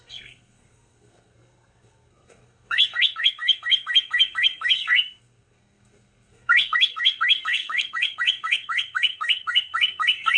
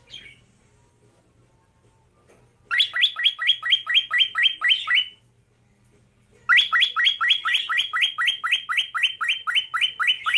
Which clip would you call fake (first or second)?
first